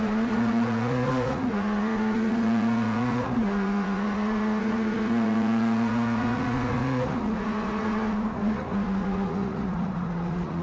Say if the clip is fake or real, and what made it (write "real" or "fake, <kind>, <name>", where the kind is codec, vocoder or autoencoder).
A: fake, vocoder, Vocos